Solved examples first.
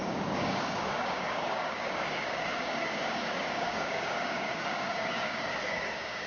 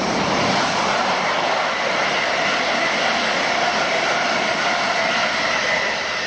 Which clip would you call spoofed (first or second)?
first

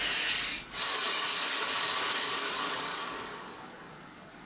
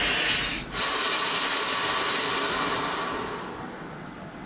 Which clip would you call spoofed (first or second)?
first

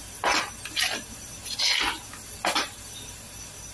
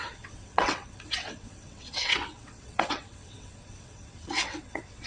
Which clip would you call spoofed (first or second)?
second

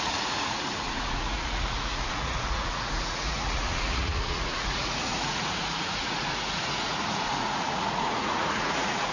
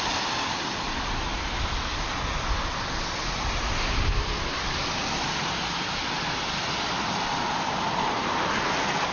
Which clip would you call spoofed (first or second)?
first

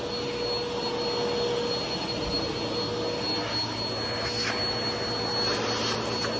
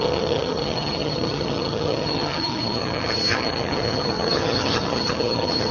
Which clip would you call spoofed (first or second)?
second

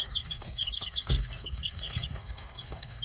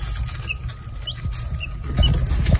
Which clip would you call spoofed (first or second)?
first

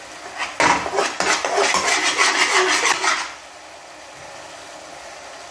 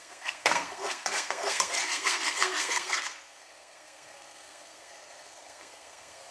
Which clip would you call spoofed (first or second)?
second